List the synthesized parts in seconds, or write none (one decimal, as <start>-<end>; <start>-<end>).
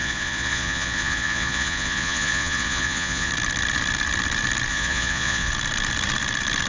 0.0-3.3; 4.7-5.5